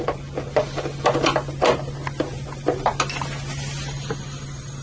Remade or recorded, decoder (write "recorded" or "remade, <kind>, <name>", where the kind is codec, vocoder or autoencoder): recorded